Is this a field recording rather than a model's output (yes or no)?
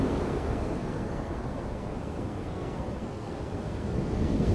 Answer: no